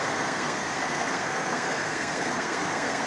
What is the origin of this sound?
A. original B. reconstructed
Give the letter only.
B